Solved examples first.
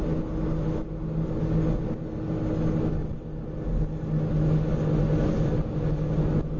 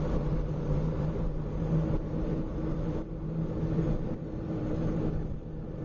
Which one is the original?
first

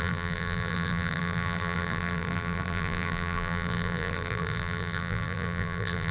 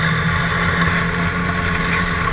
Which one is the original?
second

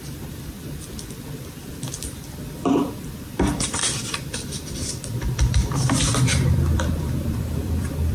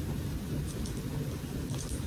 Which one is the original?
second